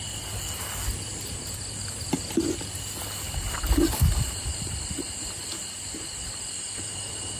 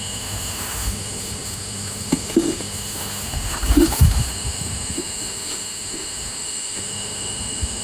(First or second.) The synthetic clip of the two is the second